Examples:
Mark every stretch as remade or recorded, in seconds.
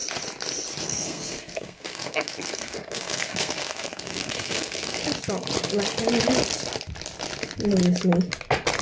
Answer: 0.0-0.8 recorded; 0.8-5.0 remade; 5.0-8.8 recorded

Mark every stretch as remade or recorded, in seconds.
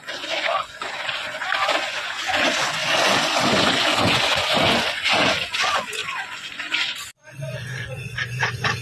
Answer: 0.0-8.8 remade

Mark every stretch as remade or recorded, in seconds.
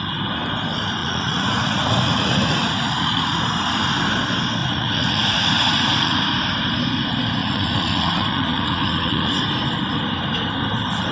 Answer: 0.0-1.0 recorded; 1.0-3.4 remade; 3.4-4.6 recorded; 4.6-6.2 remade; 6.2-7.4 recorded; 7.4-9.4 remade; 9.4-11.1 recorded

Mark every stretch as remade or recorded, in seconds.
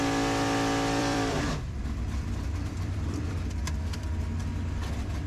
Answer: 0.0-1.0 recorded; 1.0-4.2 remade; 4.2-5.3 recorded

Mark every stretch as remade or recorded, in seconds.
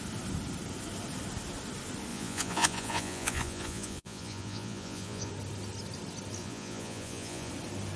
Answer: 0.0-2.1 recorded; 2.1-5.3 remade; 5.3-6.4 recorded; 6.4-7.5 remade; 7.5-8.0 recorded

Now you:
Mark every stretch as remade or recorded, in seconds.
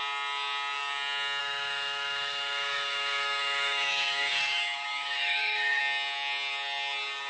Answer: 0.0-1.4 recorded; 1.4-5.8 remade; 5.8-7.3 recorded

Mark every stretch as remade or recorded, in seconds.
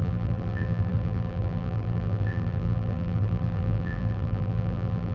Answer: 0.0-5.1 remade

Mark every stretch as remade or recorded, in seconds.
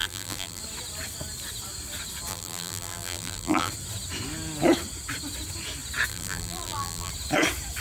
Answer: 0.0-0.6 remade; 0.6-2.3 recorded; 2.3-3.7 remade; 3.7-6.1 recorded; 6.1-7.1 remade; 7.1-7.8 recorded